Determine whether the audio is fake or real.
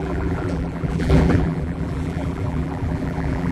fake